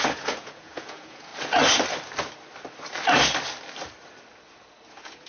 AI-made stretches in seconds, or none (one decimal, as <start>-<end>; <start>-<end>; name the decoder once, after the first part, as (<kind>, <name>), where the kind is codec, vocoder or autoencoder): 0.0-1.3 (vocoder, Vocos); 4.5-5.3